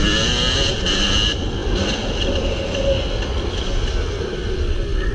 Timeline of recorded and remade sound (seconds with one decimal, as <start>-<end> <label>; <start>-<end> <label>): 0.0-5.1 recorded